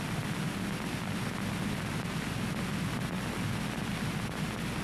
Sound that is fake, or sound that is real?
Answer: real